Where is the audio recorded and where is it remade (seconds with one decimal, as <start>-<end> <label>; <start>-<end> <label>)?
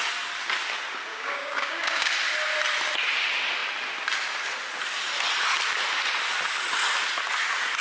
0.0-1.1 recorded; 1.1-2.1 remade; 2.1-7.8 recorded